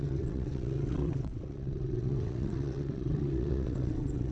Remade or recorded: remade